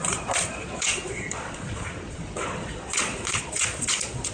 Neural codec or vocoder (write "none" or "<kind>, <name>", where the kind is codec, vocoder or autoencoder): vocoder, Vocos